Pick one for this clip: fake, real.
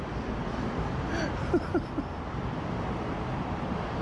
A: real